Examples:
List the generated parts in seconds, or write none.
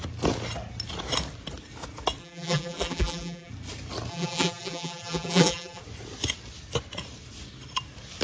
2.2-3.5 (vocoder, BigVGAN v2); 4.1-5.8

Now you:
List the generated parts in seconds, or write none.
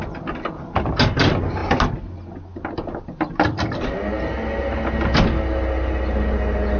none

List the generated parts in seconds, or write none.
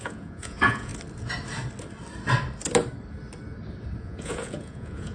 0.0-0.9 (vocoder, Vocos); 4.0-5.1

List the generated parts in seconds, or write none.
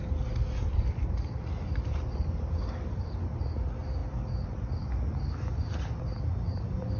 none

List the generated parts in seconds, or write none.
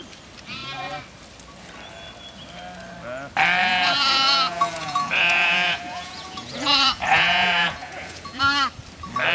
3.6-8.4 (vocoder, Vocos)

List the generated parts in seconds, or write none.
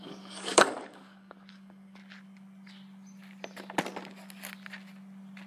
0.0-2.0 (codec, DAC)